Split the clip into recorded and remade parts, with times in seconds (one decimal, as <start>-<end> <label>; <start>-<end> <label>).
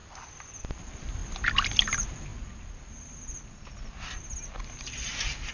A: 0.0-5.5 recorded